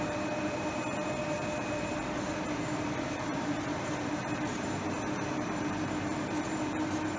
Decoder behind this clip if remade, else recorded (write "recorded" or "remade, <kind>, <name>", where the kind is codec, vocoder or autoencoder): remade, vocoder, BigVGAN v2